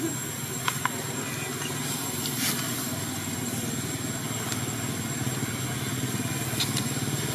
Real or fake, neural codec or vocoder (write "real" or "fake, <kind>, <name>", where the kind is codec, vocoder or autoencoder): real